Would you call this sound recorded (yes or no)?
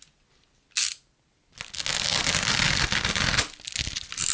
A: yes